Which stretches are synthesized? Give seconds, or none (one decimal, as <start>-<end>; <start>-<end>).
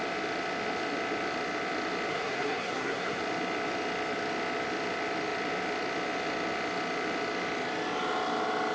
2.1-3.2